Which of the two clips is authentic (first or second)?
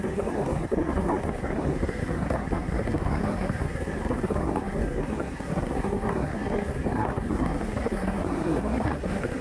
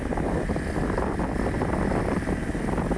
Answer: second